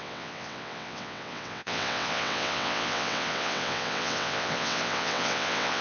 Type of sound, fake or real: fake